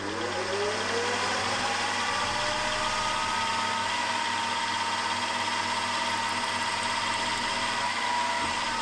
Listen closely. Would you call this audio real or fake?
real